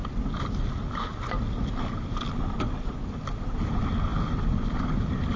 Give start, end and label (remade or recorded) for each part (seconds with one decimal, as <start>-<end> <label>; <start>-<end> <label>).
0.0-5.4 recorded